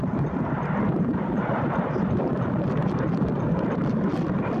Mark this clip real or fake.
fake